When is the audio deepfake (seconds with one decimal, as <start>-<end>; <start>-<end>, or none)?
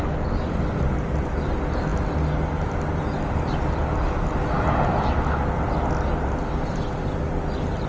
none